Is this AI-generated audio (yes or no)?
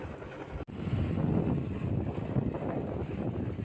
no